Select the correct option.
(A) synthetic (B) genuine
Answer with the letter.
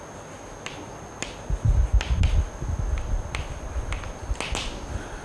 B